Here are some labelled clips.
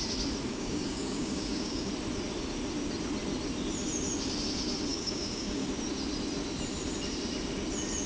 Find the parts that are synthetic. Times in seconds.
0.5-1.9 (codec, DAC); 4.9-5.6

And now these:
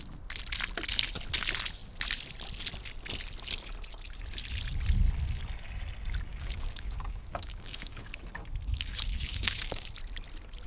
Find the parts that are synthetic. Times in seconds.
6.3-8.1 (codec, DAC); 8.7-9.9

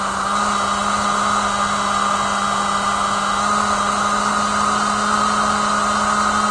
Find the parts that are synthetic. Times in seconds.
none

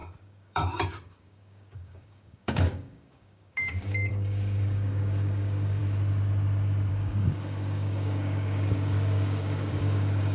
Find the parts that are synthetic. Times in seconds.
0.0-5.8 (codec, DAC); 6.9-10.3

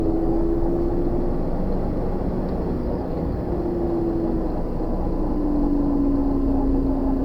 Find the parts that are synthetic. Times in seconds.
0.0-0.9 (codec, DAC); 2.8-3.5

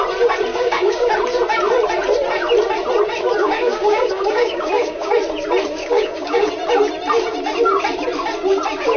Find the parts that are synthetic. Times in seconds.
0.5-1.1 (codec, DAC); 3.4-5.1; 5.8-6.5

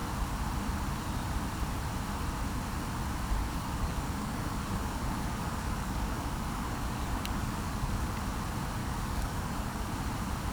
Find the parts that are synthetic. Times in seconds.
3.4-8.2 (codec, DAC); 8.8-9.9

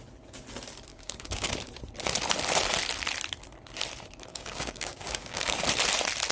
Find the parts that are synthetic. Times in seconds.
0.9-1.5 (codec, DAC); 4.3-5.6